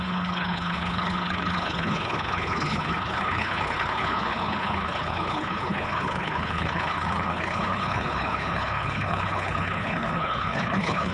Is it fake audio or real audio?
fake